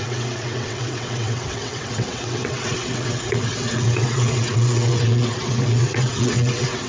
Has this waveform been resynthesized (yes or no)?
yes